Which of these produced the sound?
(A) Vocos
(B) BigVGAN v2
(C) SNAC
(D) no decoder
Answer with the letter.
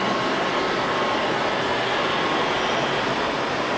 D